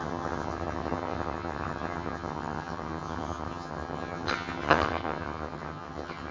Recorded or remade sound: remade